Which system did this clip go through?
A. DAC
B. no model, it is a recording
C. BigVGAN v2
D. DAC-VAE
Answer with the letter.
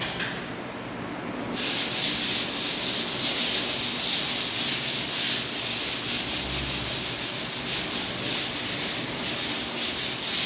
B